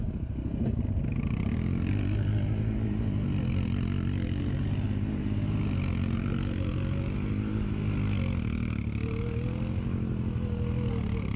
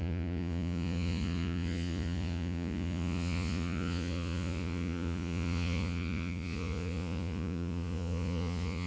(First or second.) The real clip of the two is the first